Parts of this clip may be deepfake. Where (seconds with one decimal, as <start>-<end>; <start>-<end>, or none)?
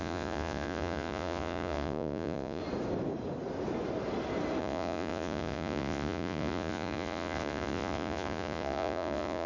0.0-2.6; 4.6-9.5